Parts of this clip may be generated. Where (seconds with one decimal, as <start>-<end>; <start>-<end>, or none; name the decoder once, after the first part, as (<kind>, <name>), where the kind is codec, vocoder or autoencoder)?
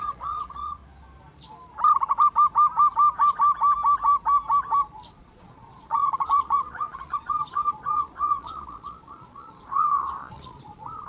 0.0-0.8 (vocoder, Vocos); 5.1-11.1